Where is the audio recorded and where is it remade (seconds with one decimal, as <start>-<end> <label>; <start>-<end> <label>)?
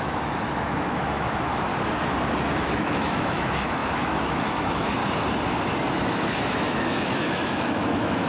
0.0-1.7 remade; 1.7-2.5 recorded; 2.5-5.0 remade; 5.0-5.9 recorded; 5.9-8.3 remade